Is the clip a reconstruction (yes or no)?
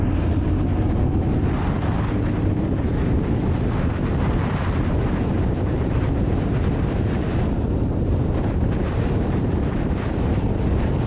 yes